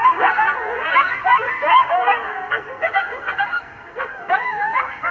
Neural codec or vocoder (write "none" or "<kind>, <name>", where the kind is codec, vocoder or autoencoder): codec, SNAC